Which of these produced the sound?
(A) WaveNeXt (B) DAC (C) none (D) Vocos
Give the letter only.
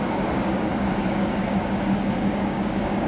B